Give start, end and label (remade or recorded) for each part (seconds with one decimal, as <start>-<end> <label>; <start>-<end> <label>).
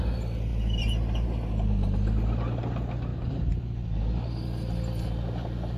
0.0-5.8 recorded